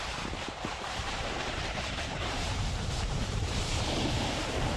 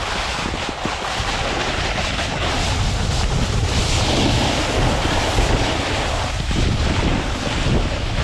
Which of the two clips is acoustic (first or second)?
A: second